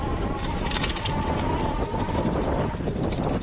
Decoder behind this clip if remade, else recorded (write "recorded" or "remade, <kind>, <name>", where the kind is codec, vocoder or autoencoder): recorded